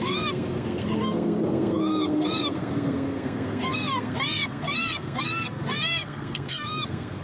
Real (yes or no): no